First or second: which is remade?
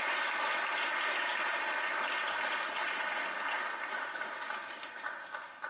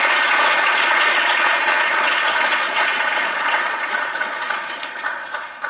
second